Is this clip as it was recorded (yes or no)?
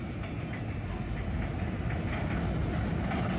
yes